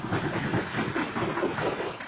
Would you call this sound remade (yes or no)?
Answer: no